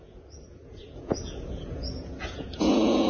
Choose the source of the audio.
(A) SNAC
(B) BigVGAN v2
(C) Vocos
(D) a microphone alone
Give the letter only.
C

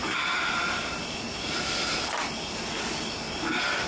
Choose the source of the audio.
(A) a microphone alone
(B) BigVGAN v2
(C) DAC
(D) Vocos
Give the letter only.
A